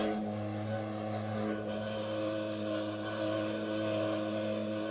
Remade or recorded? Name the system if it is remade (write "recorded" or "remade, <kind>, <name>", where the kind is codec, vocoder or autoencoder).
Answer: recorded